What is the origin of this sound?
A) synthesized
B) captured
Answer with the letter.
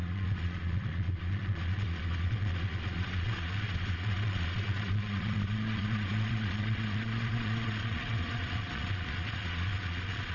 A